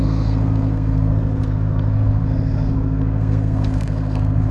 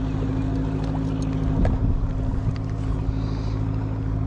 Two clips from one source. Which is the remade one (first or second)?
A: first